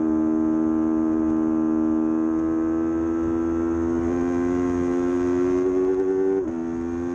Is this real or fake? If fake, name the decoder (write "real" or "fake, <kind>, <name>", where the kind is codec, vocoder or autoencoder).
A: real